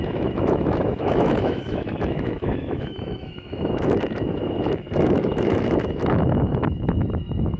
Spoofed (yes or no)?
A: yes